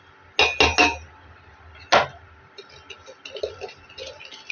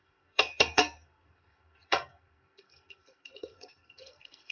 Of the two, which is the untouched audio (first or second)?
first